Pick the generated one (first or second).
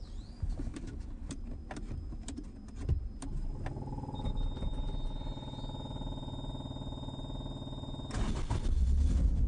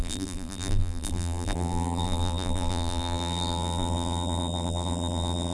second